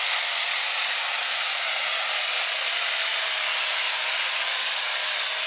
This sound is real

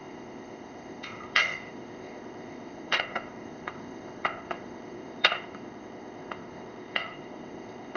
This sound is fake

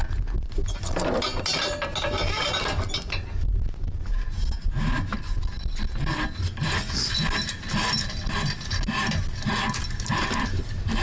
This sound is real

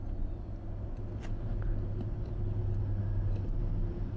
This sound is real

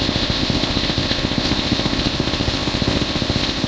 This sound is fake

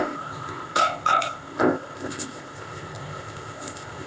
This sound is fake